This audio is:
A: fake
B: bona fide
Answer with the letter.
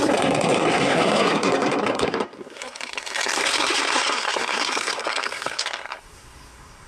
A